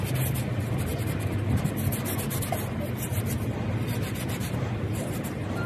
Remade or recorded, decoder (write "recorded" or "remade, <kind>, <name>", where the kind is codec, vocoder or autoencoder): recorded